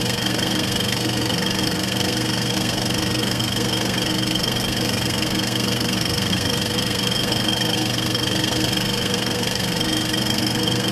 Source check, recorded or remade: remade